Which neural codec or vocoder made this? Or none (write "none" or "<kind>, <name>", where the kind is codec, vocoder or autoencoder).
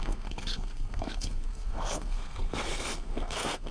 codec, SNAC